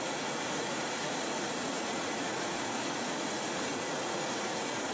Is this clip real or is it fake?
fake